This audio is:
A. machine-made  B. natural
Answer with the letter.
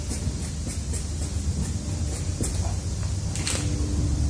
B